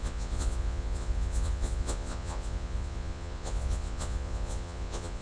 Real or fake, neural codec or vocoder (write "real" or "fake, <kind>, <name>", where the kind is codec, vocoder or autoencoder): fake, vocoder, Vocos